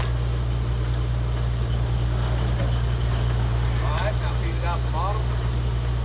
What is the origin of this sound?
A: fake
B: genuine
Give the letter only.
B